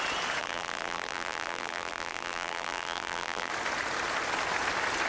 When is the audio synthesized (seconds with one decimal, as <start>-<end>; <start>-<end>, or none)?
0.4-3.5